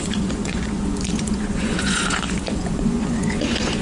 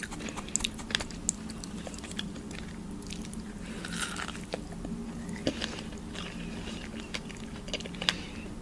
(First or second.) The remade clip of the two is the first